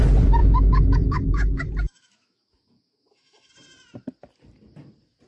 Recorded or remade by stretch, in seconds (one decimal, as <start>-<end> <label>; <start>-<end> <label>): 0.0-0.4 recorded; 0.4-3.5 remade; 3.5-5.3 recorded